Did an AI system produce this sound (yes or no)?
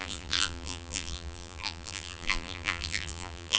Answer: yes